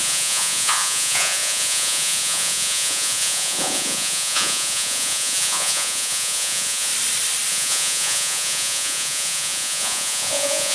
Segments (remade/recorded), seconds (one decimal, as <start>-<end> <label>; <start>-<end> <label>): 0.0-6.9 remade; 6.9-7.5 recorded; 7.5-10.7 remade